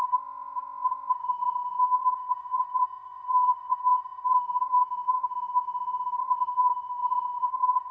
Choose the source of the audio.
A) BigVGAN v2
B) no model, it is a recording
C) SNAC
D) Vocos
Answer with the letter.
C